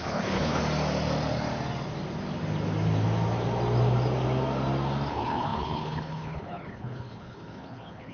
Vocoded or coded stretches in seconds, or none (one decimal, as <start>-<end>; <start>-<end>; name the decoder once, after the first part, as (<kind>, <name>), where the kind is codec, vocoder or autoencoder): 0.0-0.6 (codec, HILCodec); 5.1-8.1